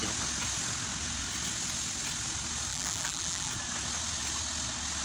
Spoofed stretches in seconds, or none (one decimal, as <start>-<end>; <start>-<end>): 2.7-3.5